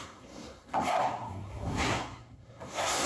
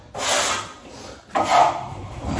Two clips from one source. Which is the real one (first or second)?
second